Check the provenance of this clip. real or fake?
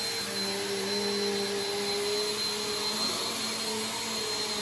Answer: real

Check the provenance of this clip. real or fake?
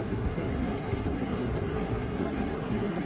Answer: fake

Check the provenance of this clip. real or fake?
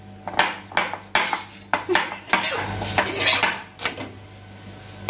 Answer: real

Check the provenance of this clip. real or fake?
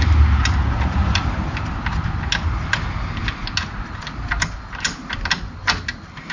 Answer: real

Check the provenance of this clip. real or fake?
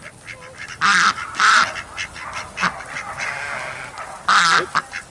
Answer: real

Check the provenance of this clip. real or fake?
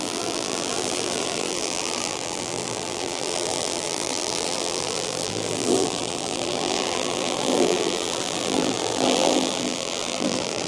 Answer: fake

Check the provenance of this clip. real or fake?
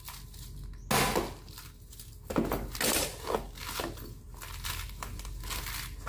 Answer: real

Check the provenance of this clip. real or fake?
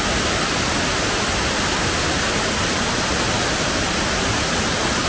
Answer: real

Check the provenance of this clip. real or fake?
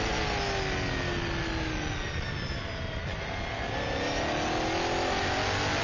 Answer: real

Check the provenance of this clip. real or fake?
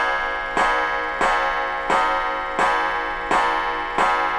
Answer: real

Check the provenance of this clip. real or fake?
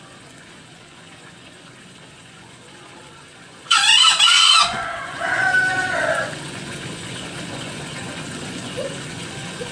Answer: fake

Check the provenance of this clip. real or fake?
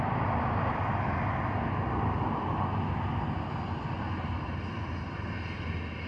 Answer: real